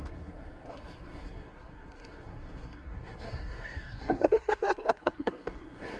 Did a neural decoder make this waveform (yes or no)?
yes